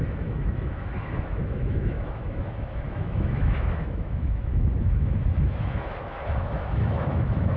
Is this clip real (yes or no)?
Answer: no